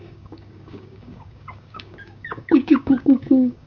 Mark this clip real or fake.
fake